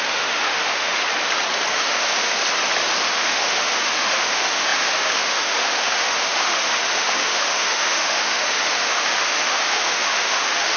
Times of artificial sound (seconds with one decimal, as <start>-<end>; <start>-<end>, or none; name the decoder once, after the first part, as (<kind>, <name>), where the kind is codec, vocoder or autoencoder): 0.0-1.0 (autoencoder, DAC-VAE); 1.7-2.4; 3.0-10.8